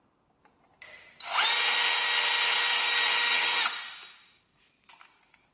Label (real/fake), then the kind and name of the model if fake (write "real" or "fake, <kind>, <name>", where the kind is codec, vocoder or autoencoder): real